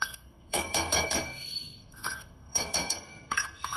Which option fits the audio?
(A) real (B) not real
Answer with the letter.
B